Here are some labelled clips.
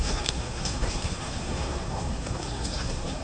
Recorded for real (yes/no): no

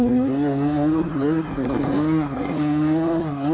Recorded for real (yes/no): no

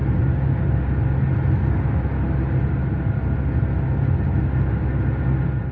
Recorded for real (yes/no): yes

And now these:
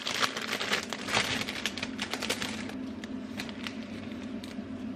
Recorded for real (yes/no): yes